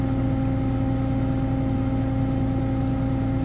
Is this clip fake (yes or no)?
no